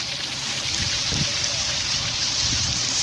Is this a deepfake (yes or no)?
yes